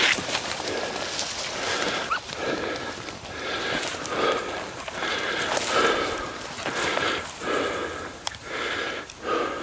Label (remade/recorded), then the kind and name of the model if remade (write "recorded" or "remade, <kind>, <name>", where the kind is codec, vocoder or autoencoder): recorded